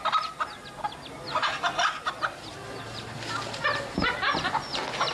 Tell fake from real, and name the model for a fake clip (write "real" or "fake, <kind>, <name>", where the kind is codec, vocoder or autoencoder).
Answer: real